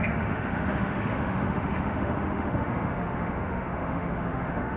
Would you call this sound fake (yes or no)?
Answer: yes